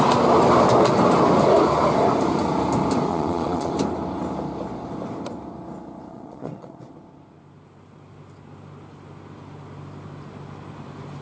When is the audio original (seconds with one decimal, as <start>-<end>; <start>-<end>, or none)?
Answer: 0.0-3.1; 3.7-6.1; 6.9-11.2